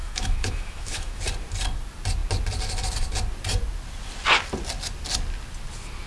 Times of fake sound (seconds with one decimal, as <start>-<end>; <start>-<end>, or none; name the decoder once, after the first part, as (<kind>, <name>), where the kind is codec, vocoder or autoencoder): 0.0-1.2 (autoencoder, DAC-VAE)